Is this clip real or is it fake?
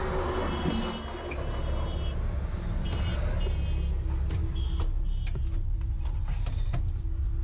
real